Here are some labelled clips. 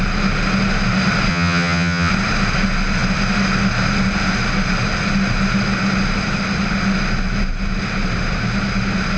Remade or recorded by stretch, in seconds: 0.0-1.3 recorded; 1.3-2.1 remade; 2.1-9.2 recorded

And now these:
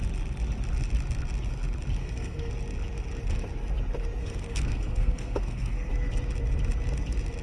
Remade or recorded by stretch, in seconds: 0.0-2.0 recorded; 2.0-2.5 remade; 2.5-4.2 recorded; 4.2-5.9 remade; 5.9-7.4 recorded